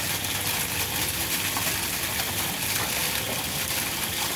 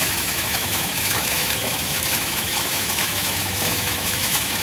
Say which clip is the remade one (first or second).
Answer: second